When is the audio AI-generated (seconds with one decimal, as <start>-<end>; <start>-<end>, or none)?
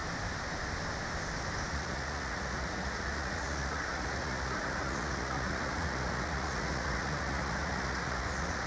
1.7-8.7